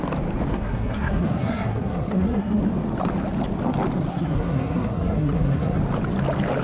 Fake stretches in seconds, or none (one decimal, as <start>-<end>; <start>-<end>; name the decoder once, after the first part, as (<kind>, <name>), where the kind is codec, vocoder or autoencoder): 0.5-2.6 (codec, SNAC); 4.1-5.8